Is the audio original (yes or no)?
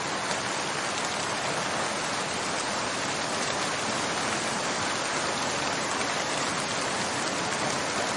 yes